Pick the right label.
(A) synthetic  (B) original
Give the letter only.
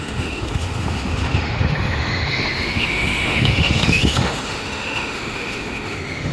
A